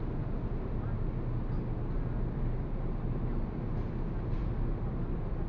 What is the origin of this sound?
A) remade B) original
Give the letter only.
B